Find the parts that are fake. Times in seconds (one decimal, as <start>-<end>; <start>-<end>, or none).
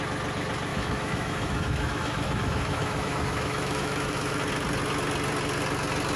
0.7-4.4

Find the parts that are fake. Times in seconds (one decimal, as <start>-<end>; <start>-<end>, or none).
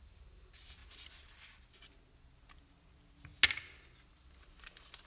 none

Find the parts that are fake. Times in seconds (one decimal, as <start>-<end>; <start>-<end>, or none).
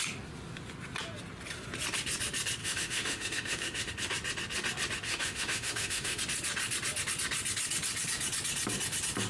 2.6-3.9; 5.1-6.2